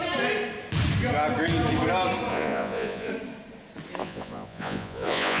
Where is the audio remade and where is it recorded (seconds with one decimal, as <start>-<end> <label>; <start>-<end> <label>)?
0.0-2.3 recorded; 2.3-3.1 remade; 3.1-4.0 recorded; 4.0-5.4 remade